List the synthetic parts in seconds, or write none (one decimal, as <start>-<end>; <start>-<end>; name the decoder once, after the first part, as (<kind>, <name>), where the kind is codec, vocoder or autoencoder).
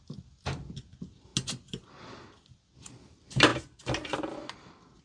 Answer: none